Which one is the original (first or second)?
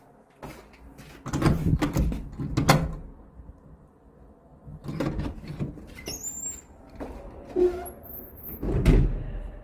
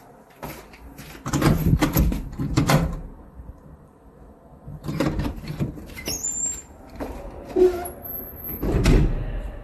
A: first